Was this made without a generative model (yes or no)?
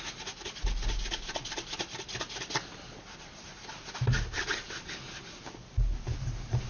yes